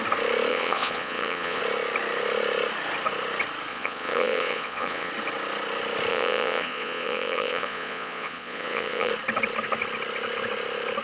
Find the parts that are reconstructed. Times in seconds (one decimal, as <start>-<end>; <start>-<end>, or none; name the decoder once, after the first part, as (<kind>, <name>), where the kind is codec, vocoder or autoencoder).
0.5-1.6 (vocoder, Vocos); 3.7-5.1; 6.1-9.1